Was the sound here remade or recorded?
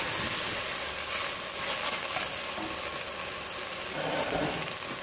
recorded